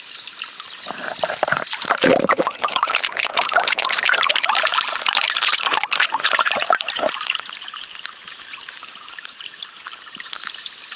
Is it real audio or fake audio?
fake